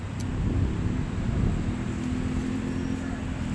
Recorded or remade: recorded